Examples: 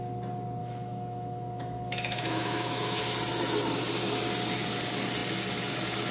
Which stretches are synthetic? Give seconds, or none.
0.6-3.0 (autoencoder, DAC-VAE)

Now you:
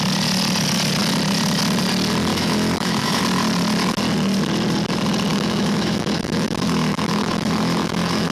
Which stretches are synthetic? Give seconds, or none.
2.3-3.2 (autoencoder, DAC-VAE); 5.3-8.3

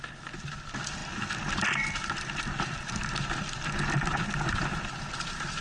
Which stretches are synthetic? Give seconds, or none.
none

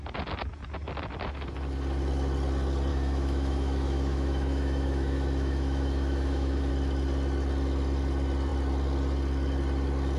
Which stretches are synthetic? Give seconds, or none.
2.9-6.7 (autoencoder, DAC-VAE)